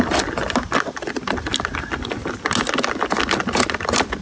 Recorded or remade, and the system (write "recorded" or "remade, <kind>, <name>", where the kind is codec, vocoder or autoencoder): recorded